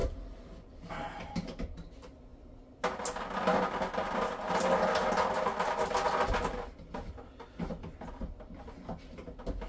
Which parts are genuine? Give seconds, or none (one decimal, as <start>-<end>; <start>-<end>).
0.0-9.7

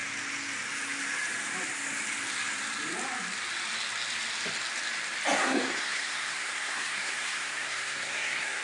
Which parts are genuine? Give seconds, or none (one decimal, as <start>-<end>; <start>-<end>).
0.0-5.4